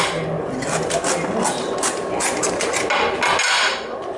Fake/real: real